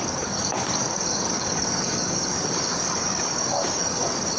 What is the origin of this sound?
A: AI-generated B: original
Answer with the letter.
A